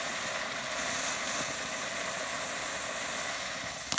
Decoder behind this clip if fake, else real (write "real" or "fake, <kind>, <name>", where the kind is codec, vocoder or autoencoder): real